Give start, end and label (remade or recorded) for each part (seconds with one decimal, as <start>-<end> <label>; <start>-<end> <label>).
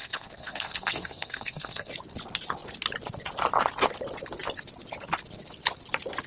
0.0-1.9 remade; 1.9-6.3 recorded